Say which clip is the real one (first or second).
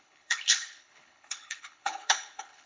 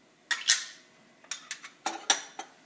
second